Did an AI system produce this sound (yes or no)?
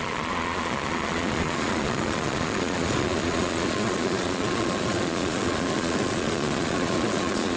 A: yes